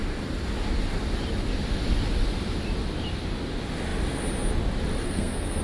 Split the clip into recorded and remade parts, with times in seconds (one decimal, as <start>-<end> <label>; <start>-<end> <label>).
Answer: 0.0-5.0 recorded; 5.0-5.6 remade